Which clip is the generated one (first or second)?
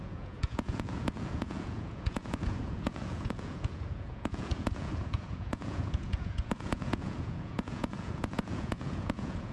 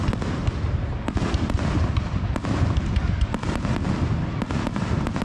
first